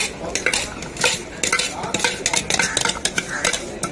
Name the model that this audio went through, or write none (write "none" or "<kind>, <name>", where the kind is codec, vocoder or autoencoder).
none